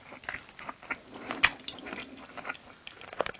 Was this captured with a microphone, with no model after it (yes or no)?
yes